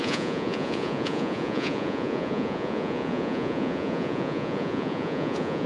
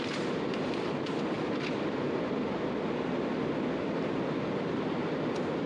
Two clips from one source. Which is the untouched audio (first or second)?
second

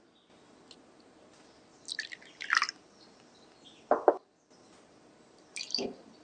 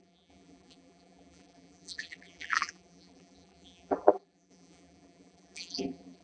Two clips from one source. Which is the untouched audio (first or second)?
first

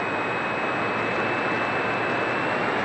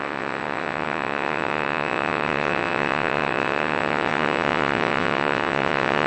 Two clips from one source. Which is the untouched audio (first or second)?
first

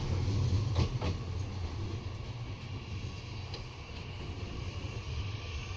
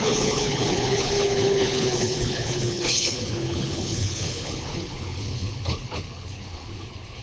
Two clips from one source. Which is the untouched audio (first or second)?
first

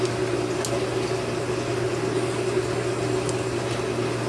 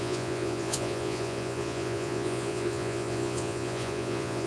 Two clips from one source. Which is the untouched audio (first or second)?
first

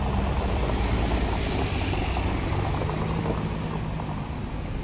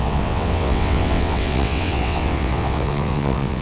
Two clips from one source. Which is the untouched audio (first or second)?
first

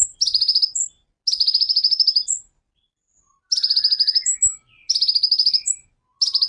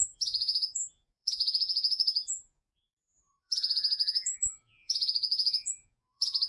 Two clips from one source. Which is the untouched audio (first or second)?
first